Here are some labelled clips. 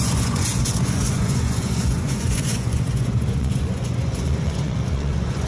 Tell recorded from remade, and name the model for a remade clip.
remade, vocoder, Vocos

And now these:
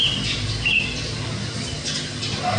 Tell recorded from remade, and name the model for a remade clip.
recorded